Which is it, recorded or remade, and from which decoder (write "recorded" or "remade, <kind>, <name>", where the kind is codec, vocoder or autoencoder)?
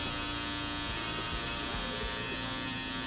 recorded